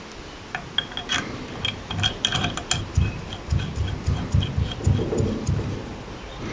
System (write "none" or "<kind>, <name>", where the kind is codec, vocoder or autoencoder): none